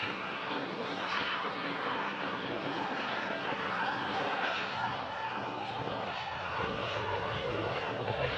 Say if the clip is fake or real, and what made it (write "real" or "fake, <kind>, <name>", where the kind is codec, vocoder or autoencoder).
fake, codec, SNAC